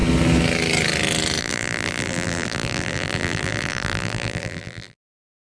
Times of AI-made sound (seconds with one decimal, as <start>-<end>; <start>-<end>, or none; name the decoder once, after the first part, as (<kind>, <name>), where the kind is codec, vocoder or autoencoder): 1.4-5.5 (vocoder, BigVGAN v2)